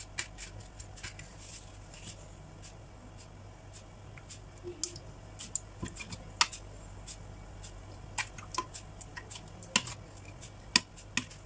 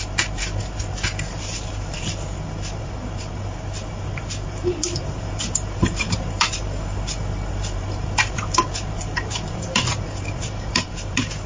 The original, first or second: first